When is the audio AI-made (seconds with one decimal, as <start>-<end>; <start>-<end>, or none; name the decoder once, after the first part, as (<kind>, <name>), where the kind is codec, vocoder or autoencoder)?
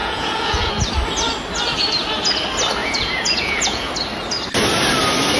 0.0-0.7 (vocoder, Vocos); 2.8-3.9